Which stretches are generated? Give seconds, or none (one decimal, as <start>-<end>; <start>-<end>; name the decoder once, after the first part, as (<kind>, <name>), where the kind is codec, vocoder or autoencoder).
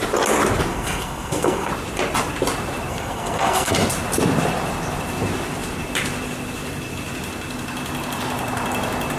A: 0.7-1.7 (codec, SNAC); 2.9-3.7